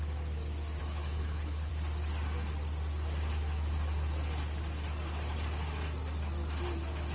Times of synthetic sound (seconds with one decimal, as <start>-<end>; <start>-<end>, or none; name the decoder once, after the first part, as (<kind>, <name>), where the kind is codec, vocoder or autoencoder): 0.8-1.7 (codec, HILCodec)